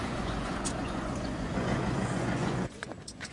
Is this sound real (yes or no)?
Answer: no